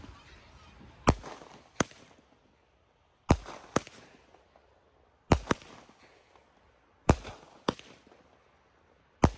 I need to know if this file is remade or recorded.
recorded